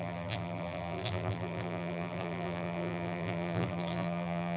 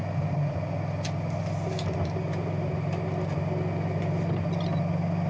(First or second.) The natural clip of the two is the second